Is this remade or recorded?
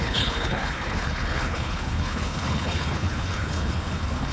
remade